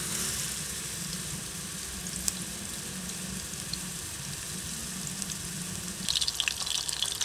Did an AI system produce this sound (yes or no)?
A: no